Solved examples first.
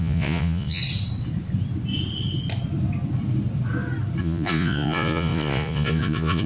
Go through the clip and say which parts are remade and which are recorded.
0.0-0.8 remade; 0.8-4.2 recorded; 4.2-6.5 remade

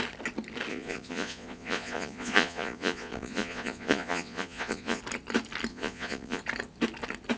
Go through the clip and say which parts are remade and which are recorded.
0.0-0.7 recorded; 0.7-5.0 remade; 5.0-5.7 recorded; 5.7-6.4 remade; 6.4-7.4 recorded

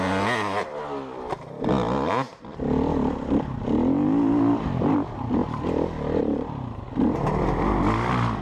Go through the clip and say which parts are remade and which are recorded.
0.0-8.4 recorded

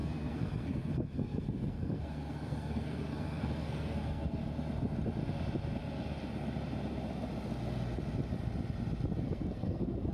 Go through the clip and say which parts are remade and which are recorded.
0.0-4.4 remade; 4.4-9.2 recorded; 9.2-10.1 remade

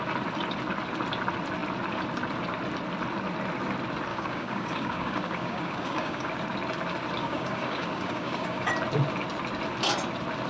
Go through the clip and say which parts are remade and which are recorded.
0.0-4.1 recorded; 4.1-6.3 remade; 6.3-7.2 recorded; 7.2-8.7 remade; 8.7-10.5 recorded

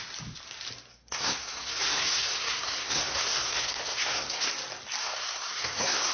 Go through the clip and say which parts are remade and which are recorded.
0.0-0.9 recorded; 0.9-4.5 remade; 4.5-5.0 recorded; 5.0-6.1 remade